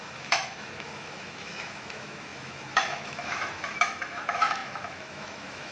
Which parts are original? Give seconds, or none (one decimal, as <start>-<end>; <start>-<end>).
none